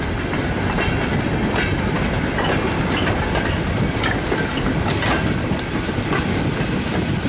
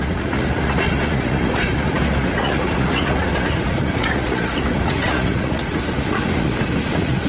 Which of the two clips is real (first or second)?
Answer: first